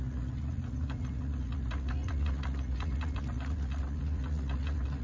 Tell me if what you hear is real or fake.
fake